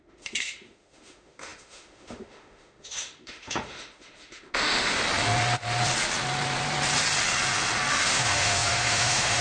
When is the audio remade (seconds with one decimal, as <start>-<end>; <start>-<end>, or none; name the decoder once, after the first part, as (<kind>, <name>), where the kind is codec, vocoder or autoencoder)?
0.0-5.0 (autoencoder, DAC-VAE); 7.9-9.4